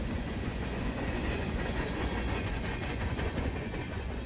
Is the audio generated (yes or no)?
yes